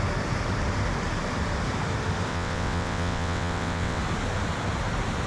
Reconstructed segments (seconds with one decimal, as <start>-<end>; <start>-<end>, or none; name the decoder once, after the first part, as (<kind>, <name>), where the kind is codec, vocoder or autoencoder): 2.3-4.0 (vocoder, WaveNeXt)